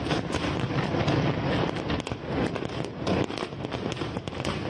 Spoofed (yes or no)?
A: no